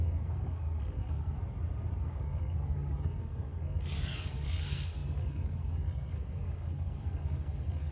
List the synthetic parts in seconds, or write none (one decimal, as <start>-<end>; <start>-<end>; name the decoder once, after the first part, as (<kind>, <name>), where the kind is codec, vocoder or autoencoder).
0.0-1.4 (codec, SNAC); 2.0-7.9